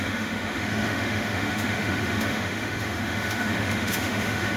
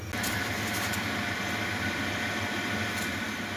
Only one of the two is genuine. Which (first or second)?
second